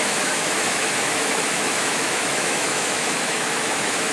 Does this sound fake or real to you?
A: fake